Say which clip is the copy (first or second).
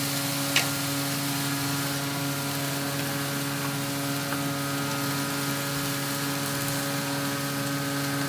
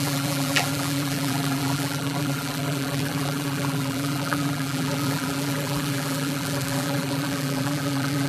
second